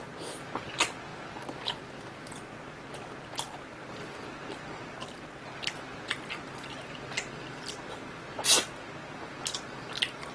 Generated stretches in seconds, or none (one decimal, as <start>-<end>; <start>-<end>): none